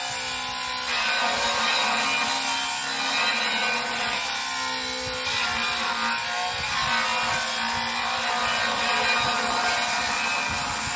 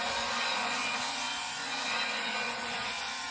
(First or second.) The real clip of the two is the first